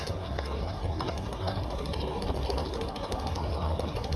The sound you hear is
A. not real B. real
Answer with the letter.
A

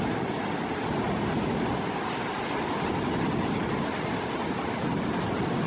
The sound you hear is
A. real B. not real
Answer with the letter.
A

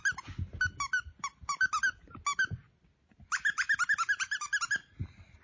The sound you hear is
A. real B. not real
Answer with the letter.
A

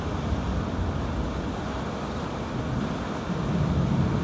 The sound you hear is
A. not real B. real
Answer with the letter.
B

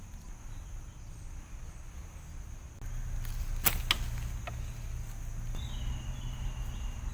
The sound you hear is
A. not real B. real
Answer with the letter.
B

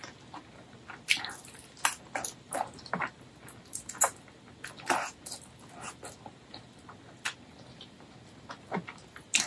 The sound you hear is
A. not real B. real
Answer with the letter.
B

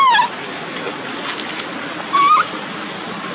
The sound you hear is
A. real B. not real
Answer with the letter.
A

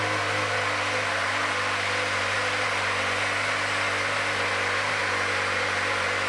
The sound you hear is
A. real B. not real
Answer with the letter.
A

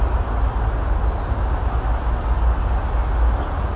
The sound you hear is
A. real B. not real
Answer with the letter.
A